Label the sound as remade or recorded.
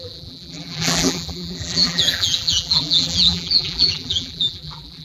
remade